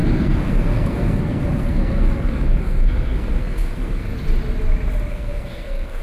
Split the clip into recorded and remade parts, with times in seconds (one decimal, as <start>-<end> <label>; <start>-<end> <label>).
0.0-4.1 remade; 4.1-5.1 recorded; 5.1-6.0 remade